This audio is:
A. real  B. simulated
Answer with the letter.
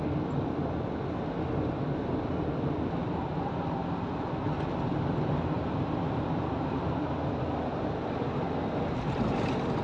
A